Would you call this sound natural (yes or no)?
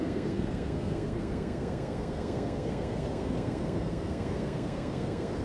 no